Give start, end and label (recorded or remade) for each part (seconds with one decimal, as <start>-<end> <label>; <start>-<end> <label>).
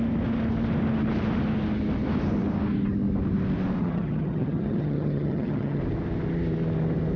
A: 0.0-3.8 recorded; 3.8-5.8 remade; 5.8-7.2 recorded